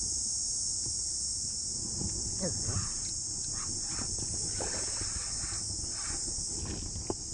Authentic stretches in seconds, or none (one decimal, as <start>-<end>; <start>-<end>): 0.0-7.3

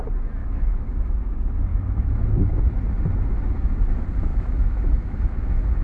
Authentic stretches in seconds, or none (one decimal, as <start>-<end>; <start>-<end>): 0.0-0.4; 1.1-1.7; 2.2-4.3; 5.2-5.8

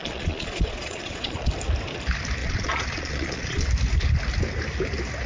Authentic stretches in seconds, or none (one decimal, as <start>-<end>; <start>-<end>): 1.5-2.4; 3.7-5.3

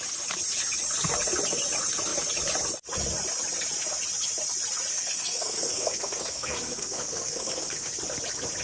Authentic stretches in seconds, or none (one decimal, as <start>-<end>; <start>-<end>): 0.0-4.9; 7.9-8.6

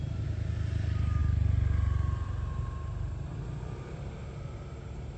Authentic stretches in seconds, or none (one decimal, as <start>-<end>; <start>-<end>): 0.0-5.2